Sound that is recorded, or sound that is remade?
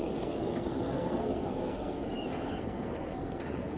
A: remade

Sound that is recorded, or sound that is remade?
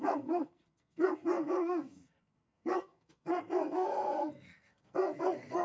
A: remade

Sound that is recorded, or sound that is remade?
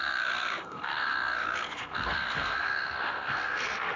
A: remade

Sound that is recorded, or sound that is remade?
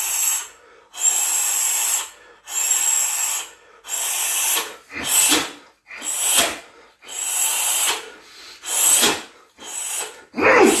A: recorded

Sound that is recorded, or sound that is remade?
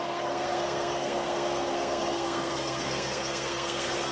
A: remade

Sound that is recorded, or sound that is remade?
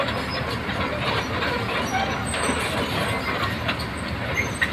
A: recorded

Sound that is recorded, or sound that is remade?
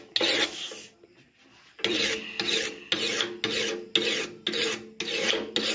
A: recorded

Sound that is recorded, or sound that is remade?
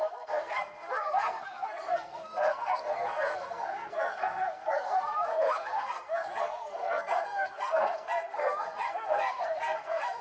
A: remade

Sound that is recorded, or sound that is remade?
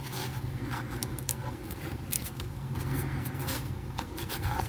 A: remade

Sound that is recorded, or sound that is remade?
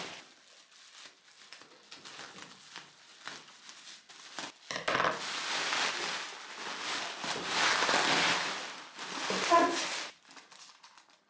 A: recorded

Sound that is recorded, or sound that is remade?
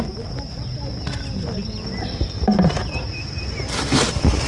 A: recorded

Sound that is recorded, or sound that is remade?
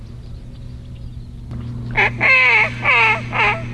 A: recorded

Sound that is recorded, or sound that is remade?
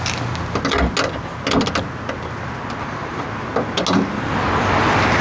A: recorded